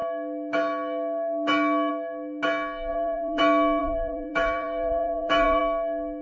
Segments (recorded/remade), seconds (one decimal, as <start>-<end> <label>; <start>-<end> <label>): 0.0-2.9 recorded; 2.9-3.4 remade; 3.4-3.8 recorded; 3.8-5.6 remade; 5.6-6.2 recorded